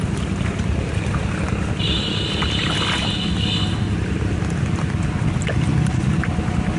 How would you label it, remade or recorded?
recorded